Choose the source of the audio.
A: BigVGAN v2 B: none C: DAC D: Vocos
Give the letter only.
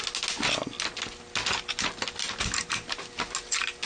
B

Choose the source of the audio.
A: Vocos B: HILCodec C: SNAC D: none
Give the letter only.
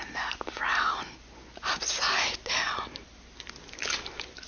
D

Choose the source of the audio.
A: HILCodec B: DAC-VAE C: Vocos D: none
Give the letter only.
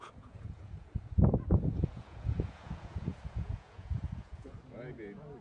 C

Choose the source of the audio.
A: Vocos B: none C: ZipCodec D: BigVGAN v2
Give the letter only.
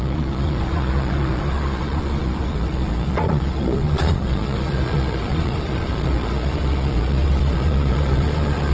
A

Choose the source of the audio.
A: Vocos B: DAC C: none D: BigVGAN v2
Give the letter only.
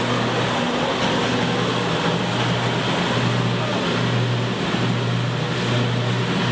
C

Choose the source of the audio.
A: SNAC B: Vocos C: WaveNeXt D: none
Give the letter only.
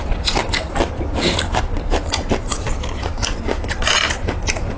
D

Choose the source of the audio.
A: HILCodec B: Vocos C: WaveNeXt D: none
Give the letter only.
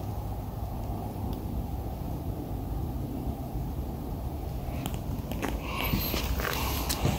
D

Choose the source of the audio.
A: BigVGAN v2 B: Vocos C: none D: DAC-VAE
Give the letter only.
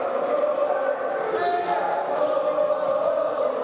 C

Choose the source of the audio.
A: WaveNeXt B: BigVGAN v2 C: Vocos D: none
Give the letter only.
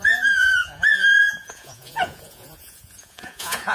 C